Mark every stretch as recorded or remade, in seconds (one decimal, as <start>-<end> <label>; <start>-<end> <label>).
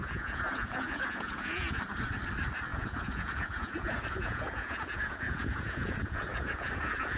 0.0-1.8 remade; 1.8-2.7 recorded; 2.7-7.2 remade